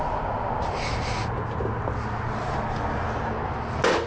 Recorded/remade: recorded